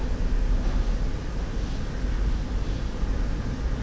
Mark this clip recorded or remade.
recorded